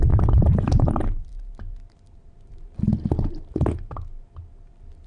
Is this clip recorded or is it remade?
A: remade